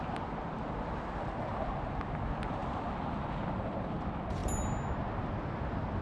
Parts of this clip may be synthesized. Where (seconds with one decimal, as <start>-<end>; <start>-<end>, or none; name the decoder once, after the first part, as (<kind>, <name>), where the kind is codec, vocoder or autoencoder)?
1.5-2.0 (vocoder, BigVGAN v2)